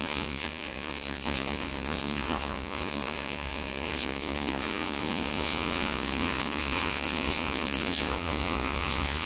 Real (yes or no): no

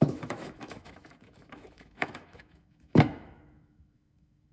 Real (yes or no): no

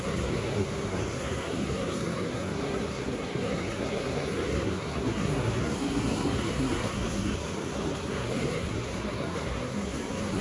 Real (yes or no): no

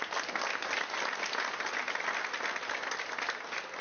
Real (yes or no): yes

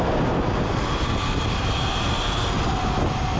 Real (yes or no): yes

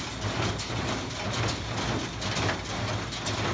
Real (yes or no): yes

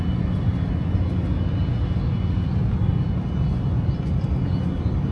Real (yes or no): yes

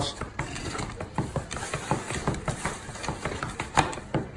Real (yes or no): yes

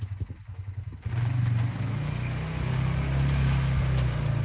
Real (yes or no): yes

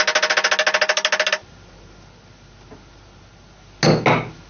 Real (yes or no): yes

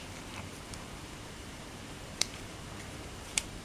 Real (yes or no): no